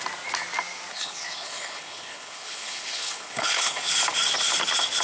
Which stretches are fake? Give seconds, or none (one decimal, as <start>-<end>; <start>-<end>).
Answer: 0.9-3.9